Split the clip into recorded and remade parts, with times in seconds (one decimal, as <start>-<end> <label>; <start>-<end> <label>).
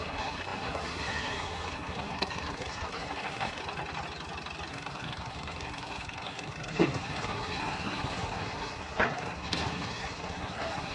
0.0-3.6 remade; 3.6-4.7 recorded; 4.7-10.9 remade